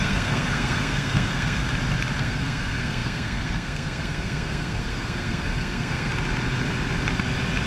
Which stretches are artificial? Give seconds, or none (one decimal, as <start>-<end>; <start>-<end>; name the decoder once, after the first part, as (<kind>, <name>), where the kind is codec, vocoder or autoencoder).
0.0-1.6 (codec, SNAC); 2.2-6.1